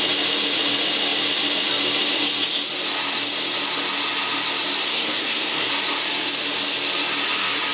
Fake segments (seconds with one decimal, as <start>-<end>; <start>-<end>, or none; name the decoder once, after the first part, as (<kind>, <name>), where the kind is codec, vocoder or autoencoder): 4.8-5.7 (codec, SNAC)